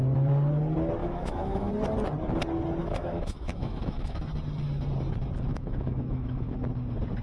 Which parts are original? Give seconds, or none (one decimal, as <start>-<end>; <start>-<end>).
0.0-1.0; 1.7-2.8; 4.2-5.5; 6.6-7.2